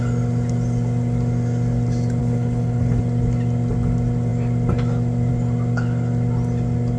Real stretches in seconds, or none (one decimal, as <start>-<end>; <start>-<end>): 0.0-2.2; 3.0-7.0